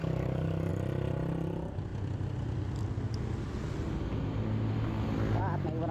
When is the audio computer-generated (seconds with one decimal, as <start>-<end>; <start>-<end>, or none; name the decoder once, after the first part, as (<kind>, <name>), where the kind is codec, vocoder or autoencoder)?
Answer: 0.0-0.7 (codec, DAC)